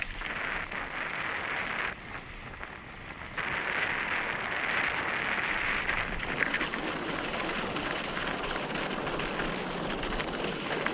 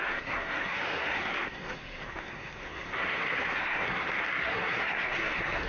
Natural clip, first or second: first